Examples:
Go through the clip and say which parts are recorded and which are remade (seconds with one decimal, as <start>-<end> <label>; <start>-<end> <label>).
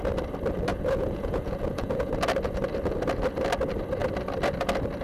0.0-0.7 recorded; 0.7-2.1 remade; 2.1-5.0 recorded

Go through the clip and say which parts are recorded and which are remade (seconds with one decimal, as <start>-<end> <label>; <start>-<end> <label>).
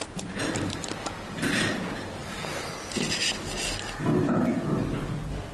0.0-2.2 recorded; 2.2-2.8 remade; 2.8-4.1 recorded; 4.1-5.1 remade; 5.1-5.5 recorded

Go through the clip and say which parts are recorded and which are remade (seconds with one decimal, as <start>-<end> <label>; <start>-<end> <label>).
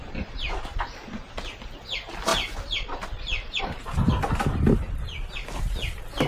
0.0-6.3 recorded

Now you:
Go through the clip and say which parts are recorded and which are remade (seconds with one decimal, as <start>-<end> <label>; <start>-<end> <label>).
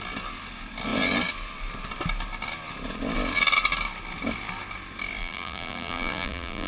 0.0-5.2 recorded; 5.2-6.7 remade